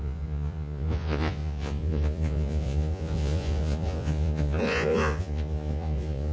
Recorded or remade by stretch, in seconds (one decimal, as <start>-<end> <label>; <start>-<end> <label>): 0.0-6.3 remade